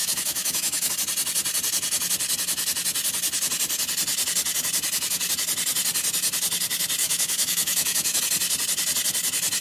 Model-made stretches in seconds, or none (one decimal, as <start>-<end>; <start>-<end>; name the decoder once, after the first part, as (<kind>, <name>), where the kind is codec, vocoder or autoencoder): 0.0-0.9 (autoencoder, DAC-VAE); 7.0-8.2